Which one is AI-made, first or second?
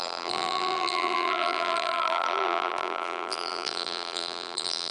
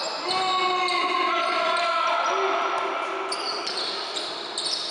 first